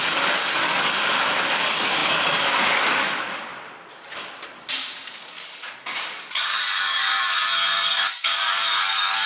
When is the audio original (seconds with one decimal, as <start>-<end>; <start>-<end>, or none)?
3.5-5.1